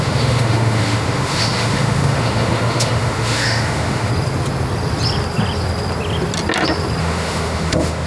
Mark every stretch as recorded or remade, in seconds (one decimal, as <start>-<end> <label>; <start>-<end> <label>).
0.0-4.1 remade; 4.1-7.0 recorded; 7.0-8.1 remade